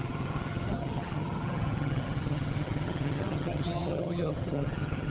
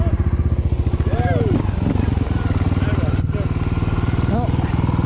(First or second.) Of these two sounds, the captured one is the second